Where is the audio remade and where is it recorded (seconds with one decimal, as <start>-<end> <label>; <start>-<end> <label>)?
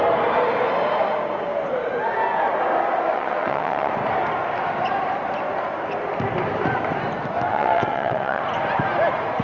0.0-3.1 recorded; 3.1-3.9 remade; 3.9-7.5 recorded; 7.5-8.4 remade; 8.4-9.4 recorded